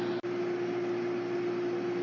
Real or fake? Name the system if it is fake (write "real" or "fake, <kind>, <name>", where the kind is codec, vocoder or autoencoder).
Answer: real